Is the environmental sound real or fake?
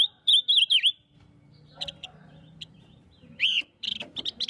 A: fake